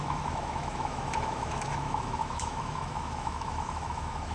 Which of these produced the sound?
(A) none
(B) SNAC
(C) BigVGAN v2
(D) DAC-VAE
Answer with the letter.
D